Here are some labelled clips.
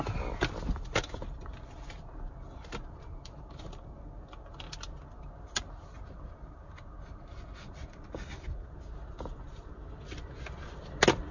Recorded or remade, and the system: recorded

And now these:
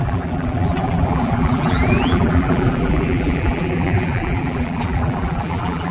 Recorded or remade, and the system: remade, vocoder, BigVGAN v2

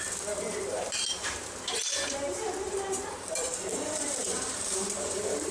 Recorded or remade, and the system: remade, vocoder, BigVGAN v2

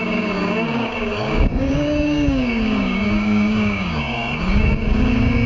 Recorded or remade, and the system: remade, codec, DAC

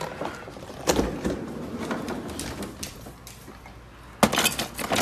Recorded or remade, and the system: recorded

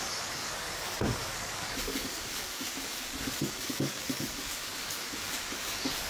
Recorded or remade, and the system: remade, codec, DAC